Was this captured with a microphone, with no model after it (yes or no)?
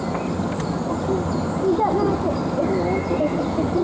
yes